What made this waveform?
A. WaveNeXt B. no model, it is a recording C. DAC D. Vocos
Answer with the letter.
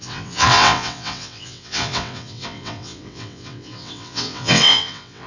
A